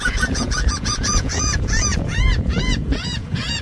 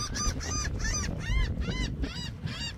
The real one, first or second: second